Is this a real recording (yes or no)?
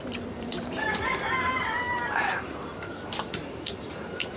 no